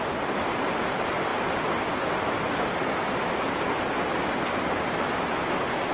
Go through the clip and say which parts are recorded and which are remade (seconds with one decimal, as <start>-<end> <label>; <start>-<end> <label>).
0.0-5.9 recorded